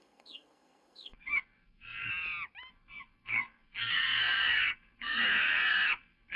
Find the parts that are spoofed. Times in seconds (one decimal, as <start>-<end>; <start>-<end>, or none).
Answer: 0.0-2.1; 2.7-6.4